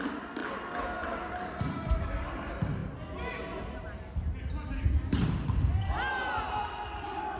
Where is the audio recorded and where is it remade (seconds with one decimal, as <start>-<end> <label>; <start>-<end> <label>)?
0.0-0.4 remade; 0.4-1.3 recorded; 1.3-2.8 remade; 2.8-5.1 recorded; 5.1-7.4 remade